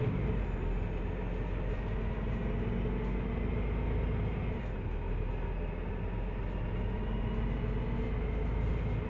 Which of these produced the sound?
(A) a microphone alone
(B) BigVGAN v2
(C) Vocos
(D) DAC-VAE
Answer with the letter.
A